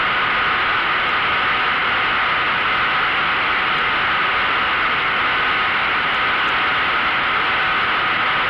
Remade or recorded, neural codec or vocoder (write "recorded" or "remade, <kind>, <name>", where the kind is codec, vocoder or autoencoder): recorded